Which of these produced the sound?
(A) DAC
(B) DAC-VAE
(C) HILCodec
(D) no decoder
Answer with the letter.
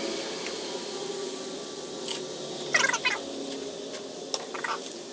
D